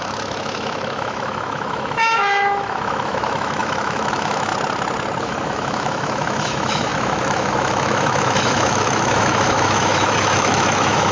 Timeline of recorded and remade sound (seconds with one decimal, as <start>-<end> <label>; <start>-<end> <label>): 0.0-4.5 remade; 4.5-5.2 recorded; 5.2-11.1 remade